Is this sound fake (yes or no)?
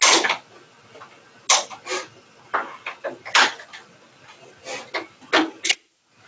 no